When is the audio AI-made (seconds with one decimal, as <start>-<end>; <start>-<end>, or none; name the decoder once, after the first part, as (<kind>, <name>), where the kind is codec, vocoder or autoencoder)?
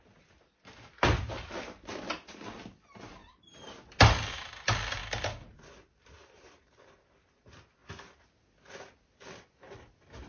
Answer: none